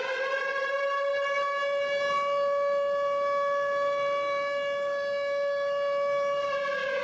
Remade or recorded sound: recorded